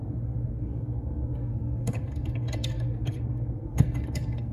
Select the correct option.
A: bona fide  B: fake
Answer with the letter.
B